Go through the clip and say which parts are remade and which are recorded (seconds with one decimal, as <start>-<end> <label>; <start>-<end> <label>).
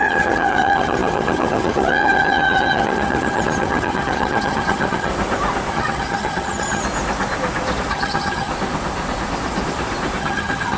0.0-5.1 remade; 5.1-5.7 recorded; 5.7-6.8 remade; 6.8-7.9 recorded; 7.9-8.5 remade; 8.5-10.2 recorded; 10.2-10.8 remade